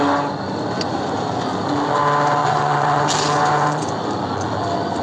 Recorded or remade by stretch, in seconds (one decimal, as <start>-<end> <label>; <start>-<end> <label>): 0.0-2.4 recorded; 2.4-3.0 remade; 3.0-5.0 recorded